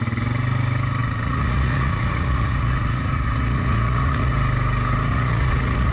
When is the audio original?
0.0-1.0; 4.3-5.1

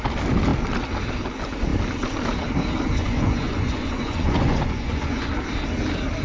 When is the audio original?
0.0-3.0; 5.3-6.2

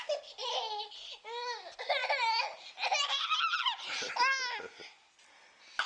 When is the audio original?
0.0-5.9

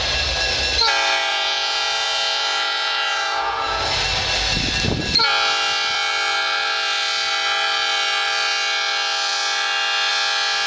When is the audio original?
0.0-1.3; 3.8-10.7

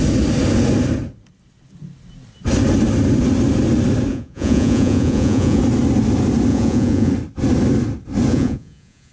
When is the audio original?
0.0-4.1; 5.6-6.5; 7.1-8.3

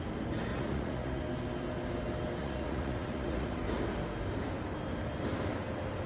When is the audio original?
0.0-0.5; 1.2-2.4; 3.6-6.1

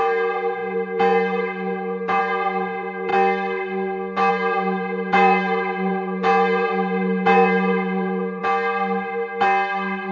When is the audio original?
3.1-4.3; 8.4-10.1